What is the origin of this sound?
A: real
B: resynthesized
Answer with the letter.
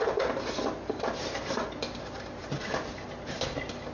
A